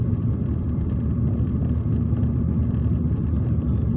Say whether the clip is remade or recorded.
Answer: recorded